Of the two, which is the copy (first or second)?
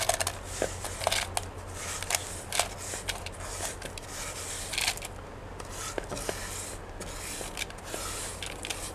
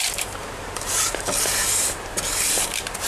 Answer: second